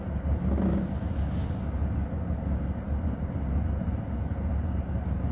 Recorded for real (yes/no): yes